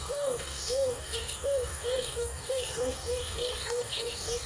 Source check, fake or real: fake